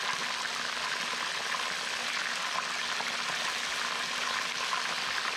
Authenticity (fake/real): real